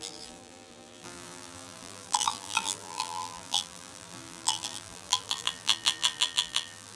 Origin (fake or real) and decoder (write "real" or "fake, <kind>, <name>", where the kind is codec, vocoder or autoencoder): fake, vocoder, BigVGAN v2